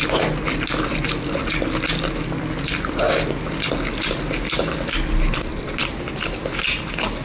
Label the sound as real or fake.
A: real